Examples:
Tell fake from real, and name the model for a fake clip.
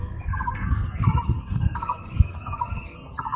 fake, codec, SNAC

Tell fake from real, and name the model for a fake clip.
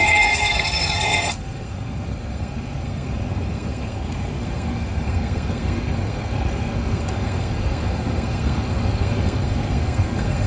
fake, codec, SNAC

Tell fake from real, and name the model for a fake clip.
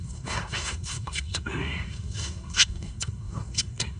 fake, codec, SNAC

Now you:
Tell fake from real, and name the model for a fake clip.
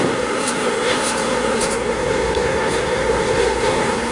fake, codec, SNAC